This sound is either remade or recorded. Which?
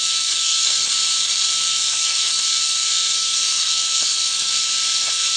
remade